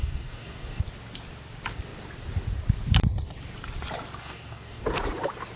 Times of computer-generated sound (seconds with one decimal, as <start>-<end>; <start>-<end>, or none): 0.0-0.8; 4.2-4.8